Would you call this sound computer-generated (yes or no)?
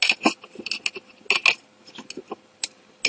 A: no